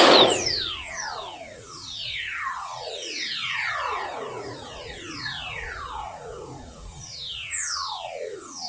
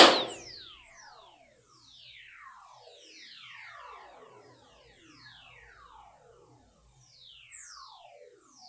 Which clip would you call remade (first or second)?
first